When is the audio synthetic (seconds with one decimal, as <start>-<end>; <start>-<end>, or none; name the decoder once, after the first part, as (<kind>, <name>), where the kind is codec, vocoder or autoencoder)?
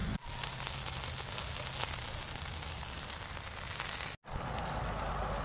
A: none